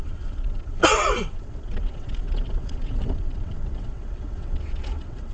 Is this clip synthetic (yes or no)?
yes